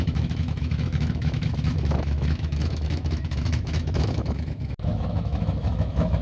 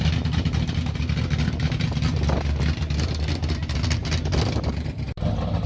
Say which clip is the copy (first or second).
first